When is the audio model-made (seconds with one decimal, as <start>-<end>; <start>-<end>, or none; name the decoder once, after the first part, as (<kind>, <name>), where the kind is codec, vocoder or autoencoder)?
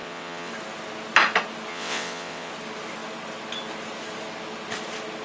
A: 0.0-0.5 (vocoder, WaveNeXt); 1.7-2.5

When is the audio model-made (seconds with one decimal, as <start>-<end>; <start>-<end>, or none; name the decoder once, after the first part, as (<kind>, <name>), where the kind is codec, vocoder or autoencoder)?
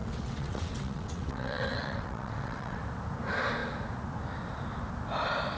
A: 0.0-2.8 (vocoder, WaveNeXt)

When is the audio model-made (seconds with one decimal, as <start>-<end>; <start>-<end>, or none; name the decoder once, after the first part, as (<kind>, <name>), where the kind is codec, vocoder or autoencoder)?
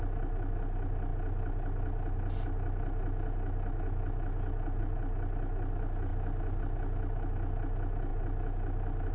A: none